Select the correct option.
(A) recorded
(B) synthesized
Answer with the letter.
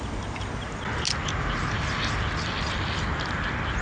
A